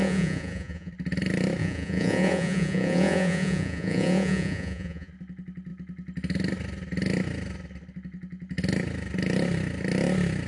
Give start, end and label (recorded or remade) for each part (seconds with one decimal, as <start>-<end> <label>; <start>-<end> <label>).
0.0-0.9 remade; 0.9-1.6 recorded; 1.6-5.1 remade; 5.1-10.5 recorded

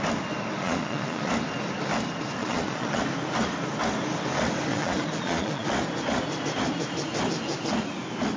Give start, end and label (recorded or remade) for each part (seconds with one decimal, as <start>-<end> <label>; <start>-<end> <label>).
0.0-0.6 recorded; 0.6-1.3 remade; 1.3-2.4 recorded; 2.4-3.0 remade; 3.0-4.7 recorded; 4.7-5.7 remade; 5.7-8.4 recorded

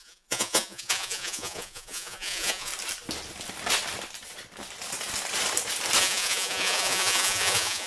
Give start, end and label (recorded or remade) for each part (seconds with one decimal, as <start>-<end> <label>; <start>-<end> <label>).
0.0-2.7 remade; 2.7-6.0 recorded; 6.0-7.9 remade

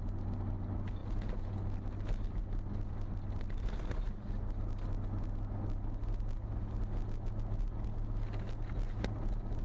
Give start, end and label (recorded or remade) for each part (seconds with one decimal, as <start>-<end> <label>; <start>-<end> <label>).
0.0-1.0 recorded; 1.0-1.5 remade; 1.5-9.6 recorded

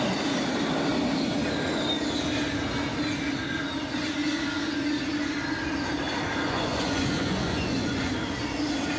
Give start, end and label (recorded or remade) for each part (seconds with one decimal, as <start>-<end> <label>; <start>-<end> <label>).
0.0-6.3 recorded; 6.3-8.1 remade; 8.1-9.0 recorded

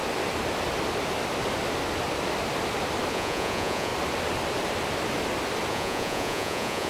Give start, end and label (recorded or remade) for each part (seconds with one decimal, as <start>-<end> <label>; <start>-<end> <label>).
0.0-3.1 recorded; 3.1-3.9 remade; 3.9-5.7 recorded; 5.7-6.9 remade

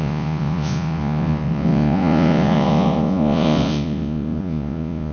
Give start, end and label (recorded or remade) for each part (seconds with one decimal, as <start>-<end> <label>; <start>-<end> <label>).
0.0-5.1 remade